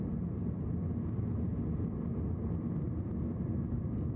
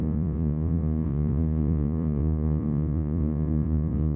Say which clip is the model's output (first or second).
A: second